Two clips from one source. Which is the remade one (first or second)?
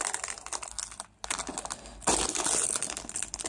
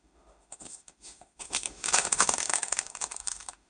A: second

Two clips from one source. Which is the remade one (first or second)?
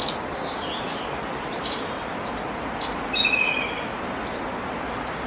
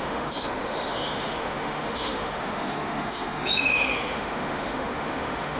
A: second